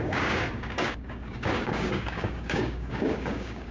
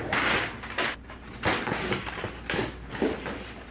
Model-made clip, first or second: first